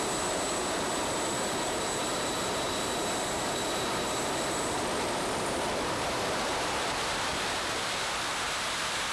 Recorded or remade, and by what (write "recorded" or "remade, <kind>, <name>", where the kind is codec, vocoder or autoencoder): remade, vocoder, BigVGAN v2